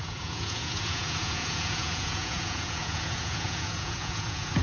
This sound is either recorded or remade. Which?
remade